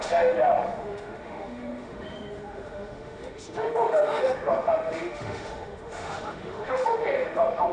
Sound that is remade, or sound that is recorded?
remade